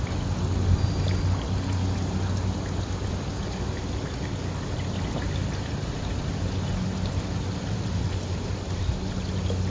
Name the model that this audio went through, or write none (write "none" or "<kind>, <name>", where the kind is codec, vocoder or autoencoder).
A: none